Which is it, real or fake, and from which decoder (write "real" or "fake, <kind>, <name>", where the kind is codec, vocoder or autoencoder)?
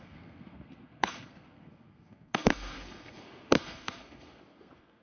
fake, codec, SNAC